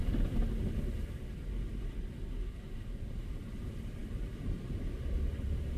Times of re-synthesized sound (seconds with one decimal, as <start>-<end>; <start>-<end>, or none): none